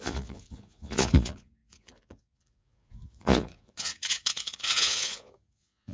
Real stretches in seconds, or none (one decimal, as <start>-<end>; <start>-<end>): none